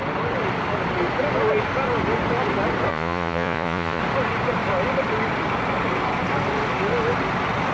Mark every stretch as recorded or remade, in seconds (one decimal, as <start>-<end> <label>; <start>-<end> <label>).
0.0-2.9 recorded; 2.9-4.0 remade; 4.0-7.7 recorded